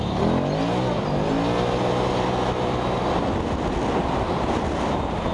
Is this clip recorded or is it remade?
recorded